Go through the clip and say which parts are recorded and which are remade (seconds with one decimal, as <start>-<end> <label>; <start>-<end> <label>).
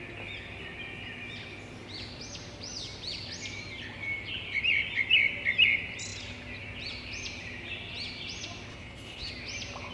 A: 0.0-8.7 recorded; 8.7-9.3 remade; 9.3-9.9 recorded